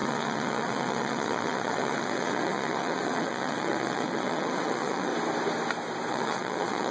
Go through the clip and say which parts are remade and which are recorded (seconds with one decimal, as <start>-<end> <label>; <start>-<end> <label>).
0.0-5.1 remade; 5.1-6.1 recorded; 6.1-6.9 remade

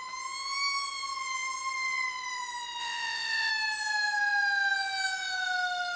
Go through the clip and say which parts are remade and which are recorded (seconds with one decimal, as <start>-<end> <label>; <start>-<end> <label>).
0.0-2.8 recorded; 2.8-3.5 remade; 3.5-6.0 recorded

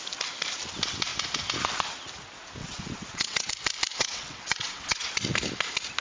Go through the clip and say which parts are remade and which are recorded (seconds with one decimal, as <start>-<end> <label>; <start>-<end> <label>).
0.0-2.6 recorded; 2.6-3.5 remade; 3.5-3.9 recorded; 3.9-5.1 remade; 5.1-6.0 recorded

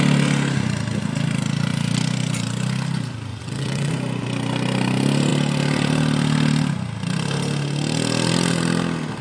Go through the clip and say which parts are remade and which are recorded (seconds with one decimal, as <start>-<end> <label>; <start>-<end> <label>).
0.0-3.3 recorded; 3.3-3.9 remade; 3.9-9.2 recorded

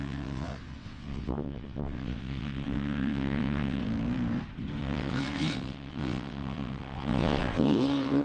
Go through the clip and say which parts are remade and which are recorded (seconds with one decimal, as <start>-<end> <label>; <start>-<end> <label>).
0.0-3.8 remade; 3.8-4.8 recorded; 4.8-8.2 remade

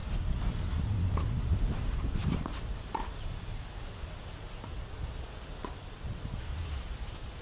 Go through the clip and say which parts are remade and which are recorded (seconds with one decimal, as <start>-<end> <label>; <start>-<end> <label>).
0.0-5.6 recorded; 5.6-6.2 remade; 6.2-7.4 recorded

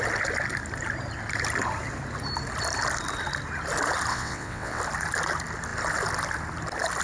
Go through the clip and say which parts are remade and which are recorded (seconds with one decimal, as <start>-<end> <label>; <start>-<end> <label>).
0.0-4.1 recorded; 4.1-4.8 remade; 4.8-7.0 recorded

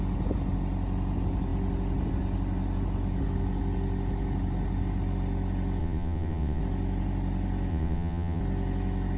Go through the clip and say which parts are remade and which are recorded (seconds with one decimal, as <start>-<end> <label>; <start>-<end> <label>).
0.0-5.8 recorded; 5.8-6.6 remade; 6.6-7.7 recorded; 7.7-8.4 remade; 8.4-9.2 recorded